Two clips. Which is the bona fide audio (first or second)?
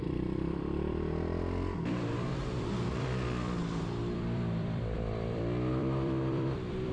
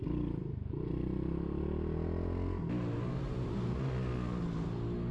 second